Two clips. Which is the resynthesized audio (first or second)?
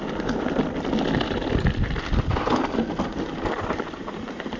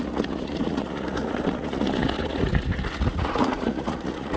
second